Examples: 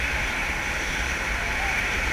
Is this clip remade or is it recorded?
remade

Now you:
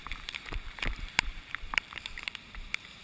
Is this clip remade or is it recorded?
remade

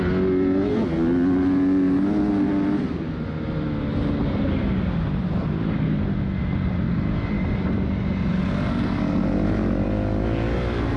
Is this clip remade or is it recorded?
recorded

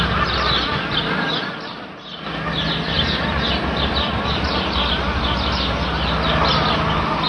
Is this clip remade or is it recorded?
recorded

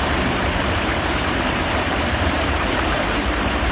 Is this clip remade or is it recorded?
remade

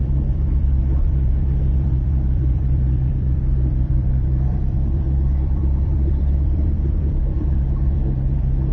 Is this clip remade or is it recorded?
remade